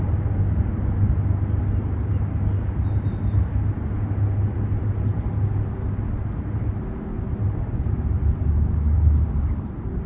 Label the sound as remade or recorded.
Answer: recorded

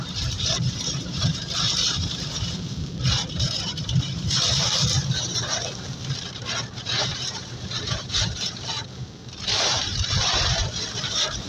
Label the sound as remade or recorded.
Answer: remade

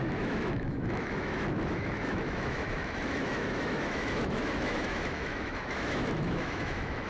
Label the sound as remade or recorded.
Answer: remade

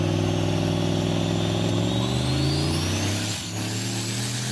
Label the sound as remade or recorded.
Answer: recorded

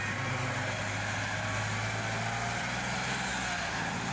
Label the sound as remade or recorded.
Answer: recorded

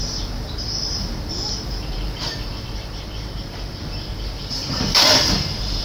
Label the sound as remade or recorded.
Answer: remade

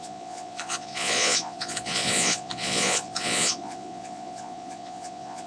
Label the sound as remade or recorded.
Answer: remade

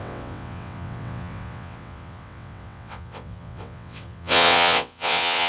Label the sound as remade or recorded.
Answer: remade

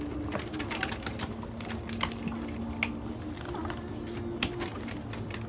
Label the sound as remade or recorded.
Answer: recorded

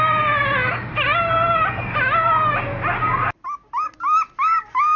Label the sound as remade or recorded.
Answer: recorded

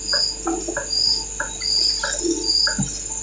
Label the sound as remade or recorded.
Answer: recorded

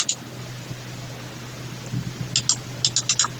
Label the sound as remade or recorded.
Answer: recorded